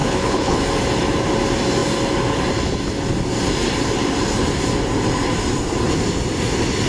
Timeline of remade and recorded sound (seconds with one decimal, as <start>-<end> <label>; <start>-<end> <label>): 0.0-0.6 remade; 0.6-6.9 recorded